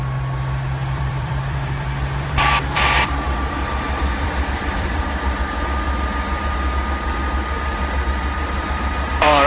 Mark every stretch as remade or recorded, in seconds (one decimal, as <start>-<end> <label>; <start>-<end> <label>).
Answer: 0.0-0.8 recorded; 0.8-5.0 remade; 5.0-9.5 recorded